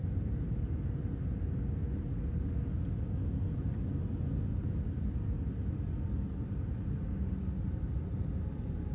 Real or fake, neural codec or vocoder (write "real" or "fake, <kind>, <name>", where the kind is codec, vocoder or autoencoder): real